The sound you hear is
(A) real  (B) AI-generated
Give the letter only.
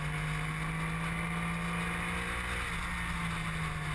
A